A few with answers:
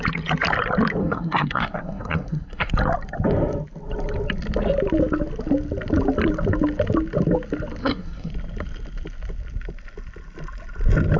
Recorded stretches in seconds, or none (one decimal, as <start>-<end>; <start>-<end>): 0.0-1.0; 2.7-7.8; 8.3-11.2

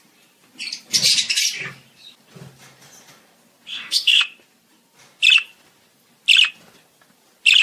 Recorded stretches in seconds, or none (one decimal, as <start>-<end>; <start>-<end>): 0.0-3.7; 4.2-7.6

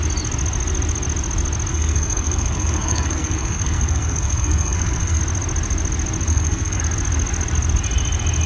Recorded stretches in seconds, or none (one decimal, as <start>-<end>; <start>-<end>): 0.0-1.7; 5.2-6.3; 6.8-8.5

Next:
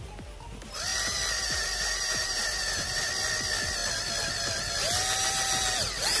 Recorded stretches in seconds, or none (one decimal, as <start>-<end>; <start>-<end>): 0.0-0.9; 3.1-6.2

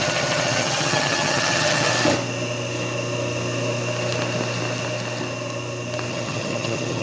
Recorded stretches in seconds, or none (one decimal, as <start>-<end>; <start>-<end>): 1.9-6.1